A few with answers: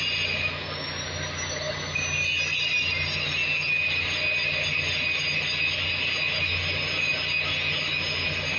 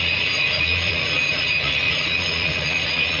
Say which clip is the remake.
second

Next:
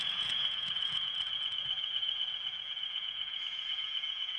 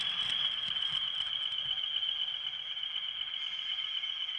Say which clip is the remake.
first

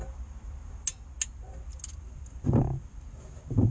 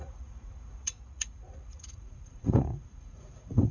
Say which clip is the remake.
second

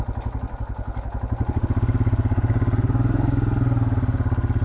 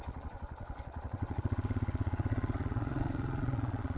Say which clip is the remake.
second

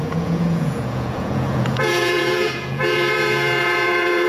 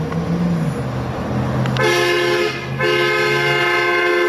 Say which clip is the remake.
first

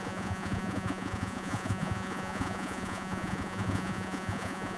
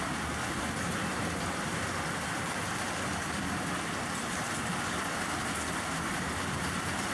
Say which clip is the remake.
first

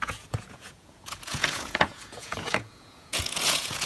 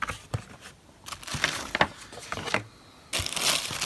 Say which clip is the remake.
first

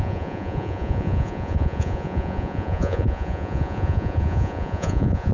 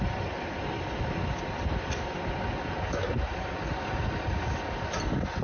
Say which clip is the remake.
first